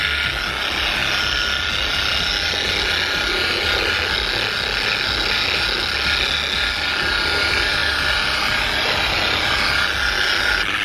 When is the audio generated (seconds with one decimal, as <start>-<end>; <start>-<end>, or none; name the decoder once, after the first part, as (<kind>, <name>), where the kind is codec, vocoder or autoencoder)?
none